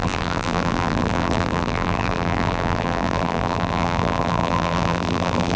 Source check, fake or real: fake